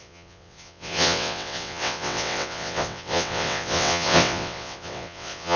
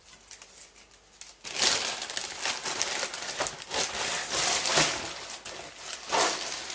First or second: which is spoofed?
first